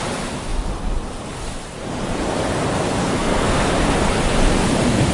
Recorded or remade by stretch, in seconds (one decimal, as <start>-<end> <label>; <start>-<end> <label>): 0.0-3.0 recorded; 3.0-3.7 remade; 3.7-5.1 recorded